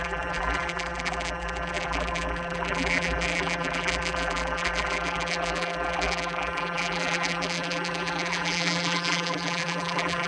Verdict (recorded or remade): remade